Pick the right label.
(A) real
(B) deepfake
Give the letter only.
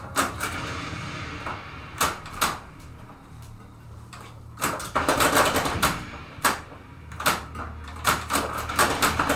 B